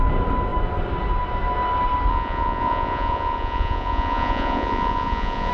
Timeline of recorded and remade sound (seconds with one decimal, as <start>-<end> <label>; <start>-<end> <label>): 0.0-2.1 recorded; 2.1-5.5 remade